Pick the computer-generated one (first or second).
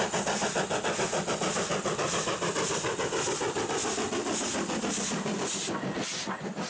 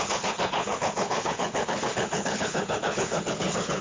second